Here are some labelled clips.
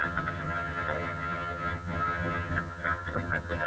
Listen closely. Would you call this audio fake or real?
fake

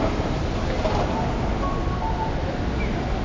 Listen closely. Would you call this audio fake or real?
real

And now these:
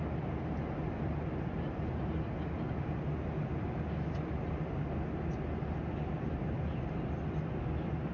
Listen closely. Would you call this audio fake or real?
real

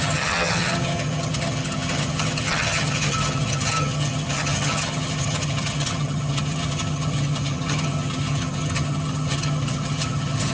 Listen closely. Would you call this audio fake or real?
fake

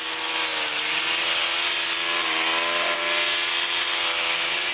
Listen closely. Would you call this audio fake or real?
real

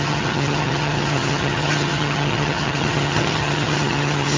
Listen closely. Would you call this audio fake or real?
fake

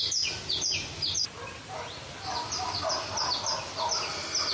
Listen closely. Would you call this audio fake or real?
real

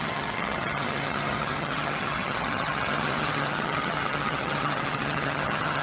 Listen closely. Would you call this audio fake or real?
fake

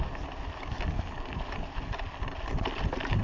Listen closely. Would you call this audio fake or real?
real